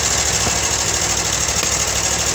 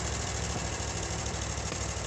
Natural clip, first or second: first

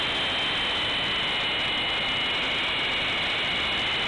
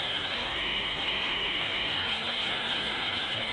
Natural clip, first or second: first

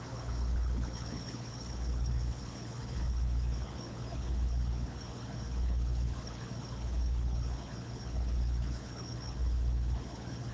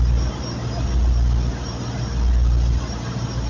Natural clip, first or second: second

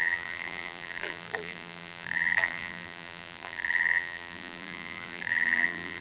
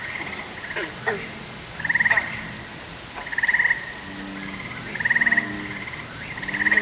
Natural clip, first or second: second